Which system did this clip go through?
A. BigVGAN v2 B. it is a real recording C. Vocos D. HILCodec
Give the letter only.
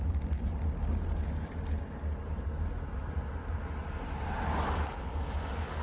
B